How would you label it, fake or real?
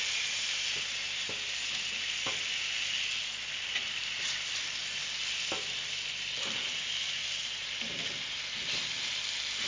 real